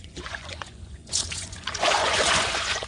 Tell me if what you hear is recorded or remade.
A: remade